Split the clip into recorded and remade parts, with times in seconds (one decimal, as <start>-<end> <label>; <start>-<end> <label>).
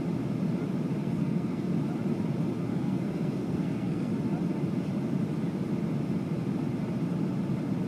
0.0-1.0 recorded; 1.0-1.7 remade; 1.7-2.7 recorded; 2.7-4.1 remade; 4.1-7.9 recorded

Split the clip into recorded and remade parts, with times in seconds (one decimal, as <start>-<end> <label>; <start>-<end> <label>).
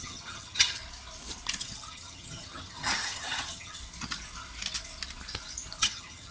0.0-0.8 remade; 0.8-1.6 recorded; 1.6-3.8 remade; 3.8-5.8 recorded; 5.8-6.3 remade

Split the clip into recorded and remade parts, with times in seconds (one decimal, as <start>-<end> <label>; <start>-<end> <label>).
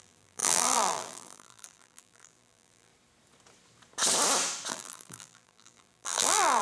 0.0-2.9 remade; 2.9-4.7 recorded; 4.7-6.6 remade